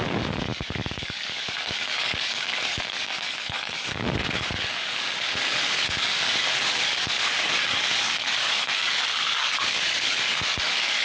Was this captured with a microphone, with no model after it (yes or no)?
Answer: no